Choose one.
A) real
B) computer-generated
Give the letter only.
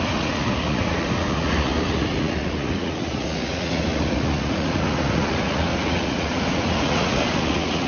B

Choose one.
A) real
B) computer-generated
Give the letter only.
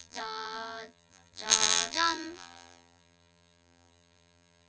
B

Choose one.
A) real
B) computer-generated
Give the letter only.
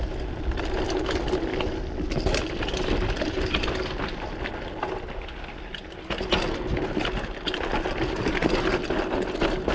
A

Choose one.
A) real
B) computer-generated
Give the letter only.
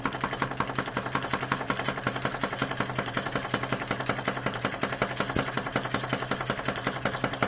A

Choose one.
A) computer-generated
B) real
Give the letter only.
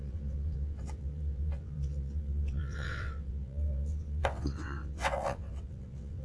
A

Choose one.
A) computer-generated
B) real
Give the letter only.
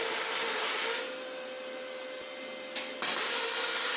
B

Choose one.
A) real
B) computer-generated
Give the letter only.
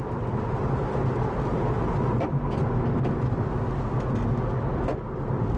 A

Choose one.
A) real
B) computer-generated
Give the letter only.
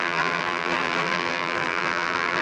B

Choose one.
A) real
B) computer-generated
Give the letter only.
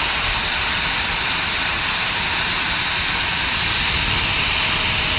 A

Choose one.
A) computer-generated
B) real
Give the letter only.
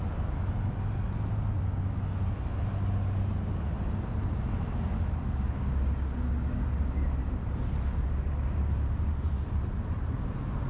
B